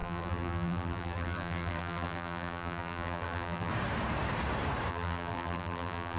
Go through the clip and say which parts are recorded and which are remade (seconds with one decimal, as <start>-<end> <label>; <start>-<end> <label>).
0.0-3.7 remade; 3.7-4.9 recorded; 4.9-6.2 remade